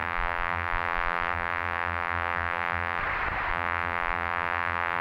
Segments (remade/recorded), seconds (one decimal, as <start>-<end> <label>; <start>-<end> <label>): 0.0-3.0 remade; 3.0-3.5 recorded; 3.5-5.0 remade